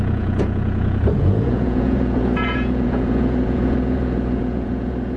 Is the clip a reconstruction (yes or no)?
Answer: yes